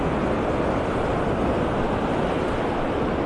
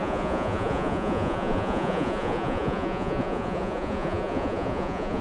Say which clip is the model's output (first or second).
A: second